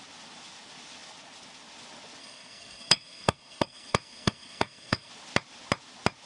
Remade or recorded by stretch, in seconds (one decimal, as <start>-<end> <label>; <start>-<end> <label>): 0.0-2.2 recorded; 2.2-5.1 remade; 5.1-6.3 recorded

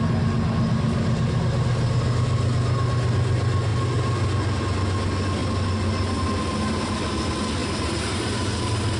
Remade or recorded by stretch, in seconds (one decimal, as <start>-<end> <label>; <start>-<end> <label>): 0.0-7.6 recorded; 7.6-8.6 remade; 8.6-9.0 recorded

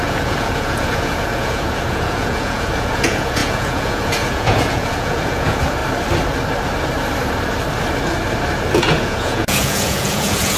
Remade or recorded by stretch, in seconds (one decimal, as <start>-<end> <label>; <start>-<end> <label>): 0.0-5.8 remade; 5.8-8.7 recorded; 8.7-10.6 remade

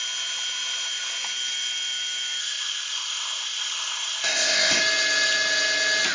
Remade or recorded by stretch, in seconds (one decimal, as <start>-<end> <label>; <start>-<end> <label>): 0.0-2.4 recorded; 2.4-4.8 remade; 4.8-6.1 recorded

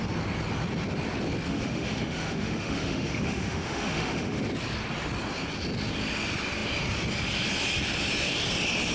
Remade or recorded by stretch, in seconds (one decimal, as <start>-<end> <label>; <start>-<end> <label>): 0.0-1.5 recorded; 1.5-4.4 remade; 4.4-8.9 recorded

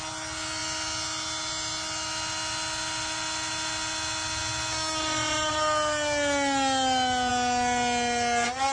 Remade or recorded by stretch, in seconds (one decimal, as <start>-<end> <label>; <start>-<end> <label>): 0.0-8.7 recorded

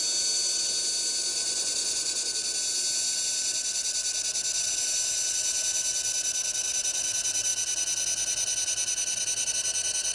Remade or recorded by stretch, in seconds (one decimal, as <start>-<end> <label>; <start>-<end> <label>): 0.0-1.3 recorded; 1.3-2.3 remade; 2.3-10.1 recorded